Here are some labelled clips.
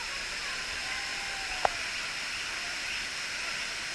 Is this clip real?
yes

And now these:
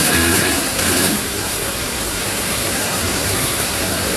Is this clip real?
no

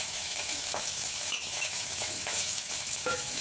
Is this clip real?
no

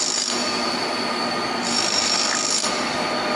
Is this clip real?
yes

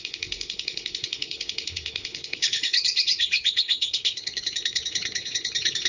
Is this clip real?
no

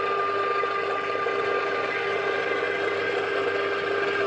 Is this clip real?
yes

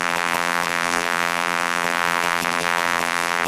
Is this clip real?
no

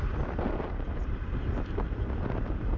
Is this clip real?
no